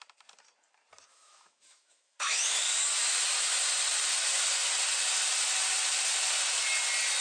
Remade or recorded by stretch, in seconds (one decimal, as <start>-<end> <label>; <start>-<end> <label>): 0.0-1.1 recorded; 1.1-2.4 remade; 2.4-7.2 recorded

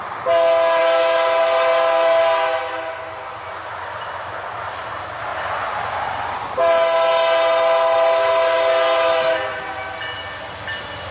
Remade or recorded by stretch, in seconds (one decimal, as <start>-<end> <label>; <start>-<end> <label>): 0.0-11.1 recorded

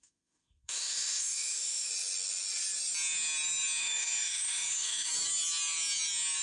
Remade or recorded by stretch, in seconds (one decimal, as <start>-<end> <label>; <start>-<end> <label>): 0.0-1.9 remade; 1.9-3.8 recorded; 3.8-5.1 remade; 5.1-6.4 recorded